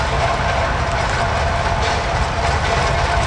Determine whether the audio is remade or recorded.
recorded